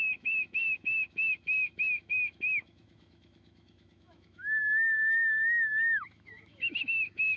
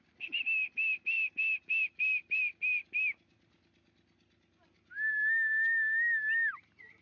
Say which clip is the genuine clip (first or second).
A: second